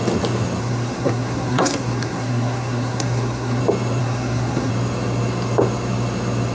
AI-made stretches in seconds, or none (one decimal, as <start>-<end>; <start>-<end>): 0.6-3.6; 4.0-4.7